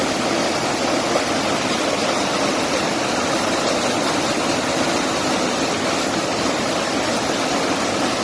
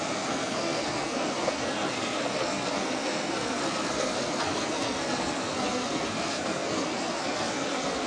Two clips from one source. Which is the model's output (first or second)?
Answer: second